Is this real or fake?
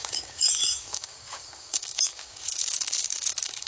fake